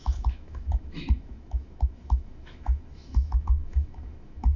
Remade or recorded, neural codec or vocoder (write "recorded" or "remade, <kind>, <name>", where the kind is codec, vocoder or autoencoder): remade, autoencoder, DAC-VAE